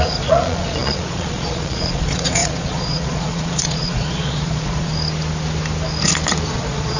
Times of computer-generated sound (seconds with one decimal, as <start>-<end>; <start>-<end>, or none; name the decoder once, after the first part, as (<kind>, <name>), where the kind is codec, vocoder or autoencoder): 0.0-4.9 (vocoder, Vocos); 6.5-7.0

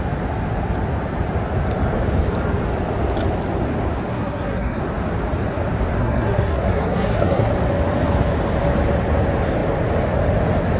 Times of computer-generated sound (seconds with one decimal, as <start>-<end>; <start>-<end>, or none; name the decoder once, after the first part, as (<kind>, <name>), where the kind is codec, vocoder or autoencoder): 4.1-4.8 (codec, SNAC); 6.0-7.5